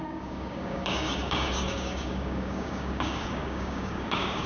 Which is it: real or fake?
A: fake